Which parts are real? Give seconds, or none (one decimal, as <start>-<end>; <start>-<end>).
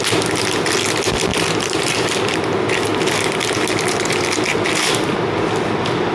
0.0-1.3; 2.4-6.1